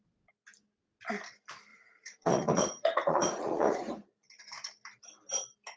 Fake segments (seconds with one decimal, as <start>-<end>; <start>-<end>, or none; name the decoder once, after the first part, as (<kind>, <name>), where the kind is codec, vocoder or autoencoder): 1.7-4.3 (vocoder, Vocos)